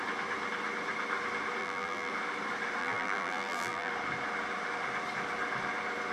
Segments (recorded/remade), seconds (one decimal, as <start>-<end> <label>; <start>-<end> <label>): 0.0-1.6 recorded; 1.6-2.1 remade; 2.1-2.8 recorded; 2.8-3.9 remade; 3.9-6.1 recorded